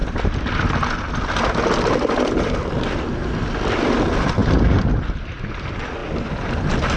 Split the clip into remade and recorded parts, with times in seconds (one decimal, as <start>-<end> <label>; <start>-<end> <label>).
0.0-7.0 recorded